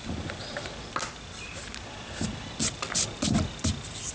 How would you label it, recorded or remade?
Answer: recorded